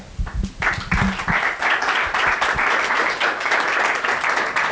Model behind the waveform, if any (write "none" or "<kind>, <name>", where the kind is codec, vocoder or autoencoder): none